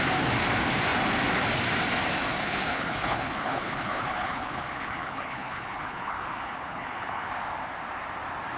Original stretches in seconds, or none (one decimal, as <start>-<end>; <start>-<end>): 0.0-2.4; 7.3-8.6